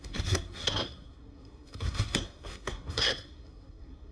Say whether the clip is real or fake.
fake